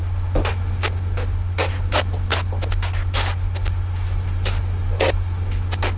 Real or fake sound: real